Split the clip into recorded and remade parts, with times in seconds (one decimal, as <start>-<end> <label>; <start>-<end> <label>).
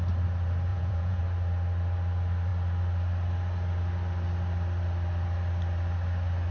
0.0-0.7 recorded; 0.7-1.2 remade; 1.2-6.5 recorded